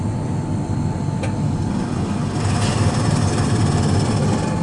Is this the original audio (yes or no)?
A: yes